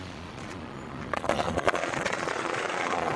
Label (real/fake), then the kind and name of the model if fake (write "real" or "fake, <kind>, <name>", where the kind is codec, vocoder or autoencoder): fake, vocoder, Vocos